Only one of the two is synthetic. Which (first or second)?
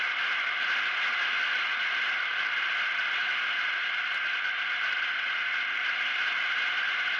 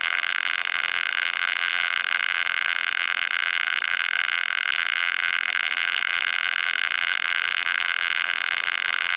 second